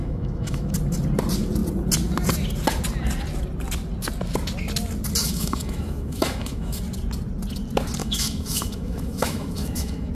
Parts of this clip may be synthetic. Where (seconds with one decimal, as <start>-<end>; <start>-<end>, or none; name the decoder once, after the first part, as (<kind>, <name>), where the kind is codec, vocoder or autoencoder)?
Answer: 0.0-0.7 (autoencoder, DAC-VAE); 5.2-6.8; 8.0-10.1